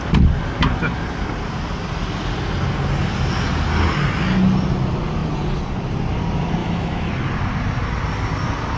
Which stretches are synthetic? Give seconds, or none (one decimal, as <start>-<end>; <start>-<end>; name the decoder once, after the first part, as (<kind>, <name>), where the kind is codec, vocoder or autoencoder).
6.6-7.1 (autoencoder, DAC-VAE)